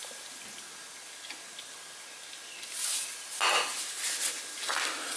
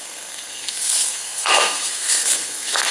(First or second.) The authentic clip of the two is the first